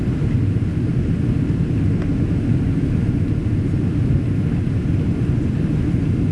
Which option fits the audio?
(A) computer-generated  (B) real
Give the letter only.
B